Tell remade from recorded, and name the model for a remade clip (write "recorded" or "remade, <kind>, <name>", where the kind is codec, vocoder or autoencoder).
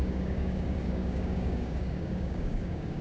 remade, codec, DAC